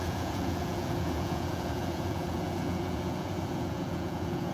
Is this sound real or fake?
fake